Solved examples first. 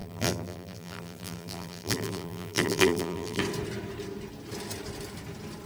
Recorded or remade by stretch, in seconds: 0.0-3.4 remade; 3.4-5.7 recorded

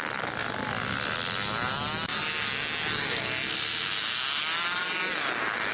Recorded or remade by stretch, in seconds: 0.0-5.7 recorded

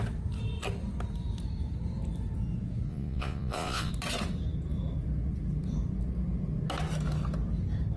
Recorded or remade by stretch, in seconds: 0.0-2.9 recorded; 2.9-3.9 remade; 3.9-8.0 recorded

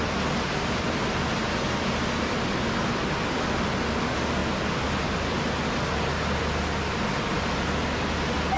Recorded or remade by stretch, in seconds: 0.0-8.6 recorded

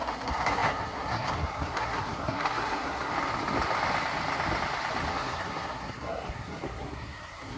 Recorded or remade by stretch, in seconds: 0.0-3.1 remade; 3.1-5.1 recorded; 5.1-7.6 remade

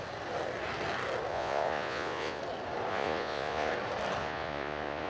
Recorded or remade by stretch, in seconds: 0.0-1.3 recorded; 1.3-2.4 remade; 2.4-2.9 recorded; 2.9-3.7 remade; 3.7-4.2 recorded; 4.2-5.1 remade

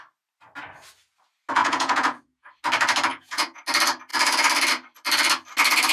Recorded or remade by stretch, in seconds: 0.0-1.6 recorded; 1.6-2.5 remade; 2.5-3.1 recorded; 3.1-3.6 remade; 3.6-5.9 recorded

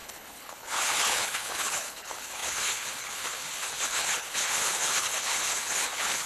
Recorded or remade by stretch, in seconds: 0.0-6.3 remade